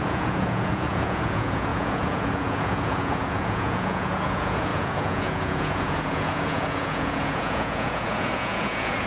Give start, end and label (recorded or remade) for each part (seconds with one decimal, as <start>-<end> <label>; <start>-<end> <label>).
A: 0.0-9.1 remade